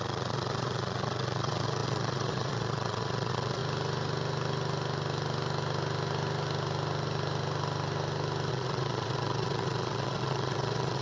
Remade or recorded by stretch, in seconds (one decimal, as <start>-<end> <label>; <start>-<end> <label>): 0.0-3.6 remade; 3.6-8.5 recorded; 8.5-11.0 remade